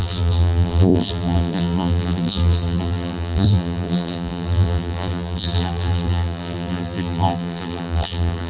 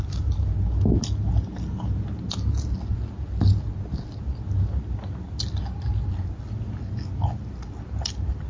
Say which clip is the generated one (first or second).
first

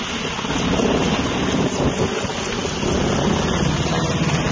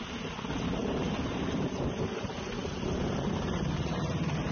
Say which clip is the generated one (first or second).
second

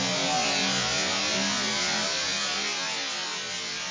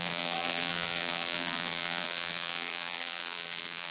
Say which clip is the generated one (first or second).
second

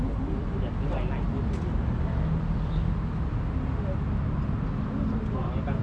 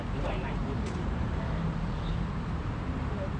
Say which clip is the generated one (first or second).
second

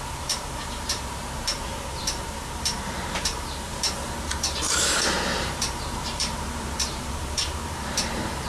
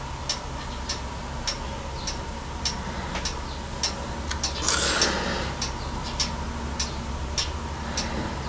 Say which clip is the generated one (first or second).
first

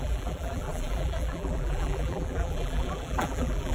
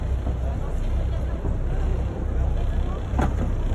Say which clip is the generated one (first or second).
first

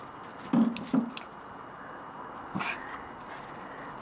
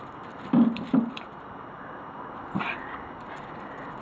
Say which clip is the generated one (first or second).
second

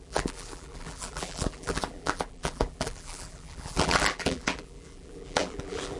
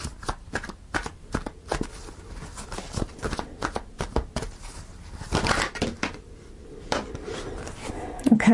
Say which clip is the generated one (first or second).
first